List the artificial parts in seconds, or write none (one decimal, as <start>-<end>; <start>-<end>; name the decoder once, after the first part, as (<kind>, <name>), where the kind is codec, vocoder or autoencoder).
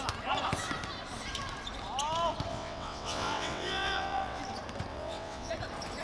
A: 2.5-4.4 (vocoder, WaveNeXt); 4.9-5.5